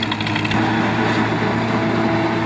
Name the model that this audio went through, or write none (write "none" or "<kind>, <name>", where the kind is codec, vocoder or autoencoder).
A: none